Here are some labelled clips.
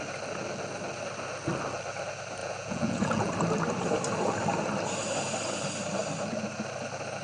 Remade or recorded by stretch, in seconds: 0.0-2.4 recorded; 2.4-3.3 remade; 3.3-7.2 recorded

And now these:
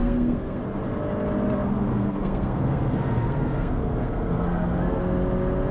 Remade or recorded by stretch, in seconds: 0.0-0.6 remade; 0.6-1.9 recorded; 1.9-5.0 remade; 5.0-5.7 recorded

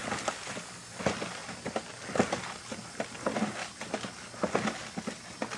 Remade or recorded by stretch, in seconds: 0.0-5.6 recorded

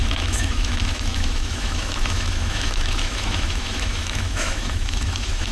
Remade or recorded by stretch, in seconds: 0.0-5.5 remade

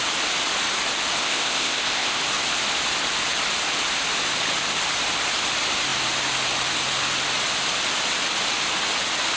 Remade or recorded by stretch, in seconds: 0.0-1.2 recorded; 1.2-2.2 remade; 2.2-9.4 recorded

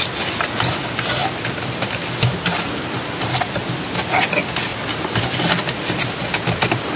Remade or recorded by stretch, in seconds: 0.0-7.0 recorded

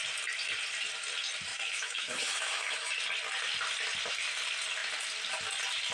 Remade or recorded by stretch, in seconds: 0.0-1.5 recorded; 1.5-2.9 remade; 2.9-5.9 recorded

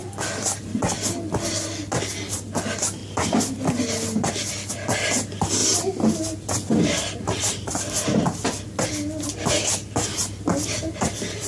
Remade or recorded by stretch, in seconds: 0.0-1.8 remade; 1.8-3.0 recorded; 3.0-4.7 remade; 4.7-5.6 recorded; 5.6-7.4 remade; 7.4-11.5 recorded